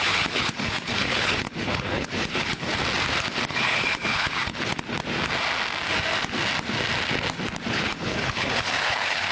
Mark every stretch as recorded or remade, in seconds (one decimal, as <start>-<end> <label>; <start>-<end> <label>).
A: 0.0-2.8 remade; 2.8-3.5 recorded; 3.5-4.7 remade; 4.7-7.7 recorded; 7.7-9.3 remade